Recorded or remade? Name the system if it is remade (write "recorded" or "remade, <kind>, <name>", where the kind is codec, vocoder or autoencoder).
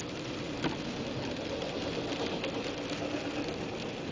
recorded